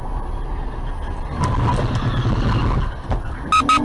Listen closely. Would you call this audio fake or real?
real